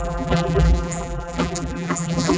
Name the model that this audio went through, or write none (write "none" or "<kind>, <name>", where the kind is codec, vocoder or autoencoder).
vocoder, BigVGAN v2